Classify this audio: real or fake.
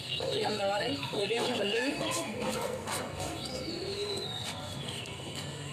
fake